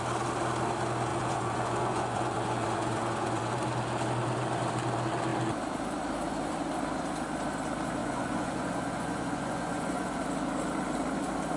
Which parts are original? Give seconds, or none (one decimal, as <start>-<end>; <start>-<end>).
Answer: 0.0-1.1; 3.5-8.0; 10.2-11.6